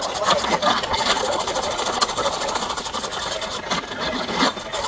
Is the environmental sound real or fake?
real